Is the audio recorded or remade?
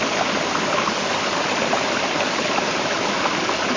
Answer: recorded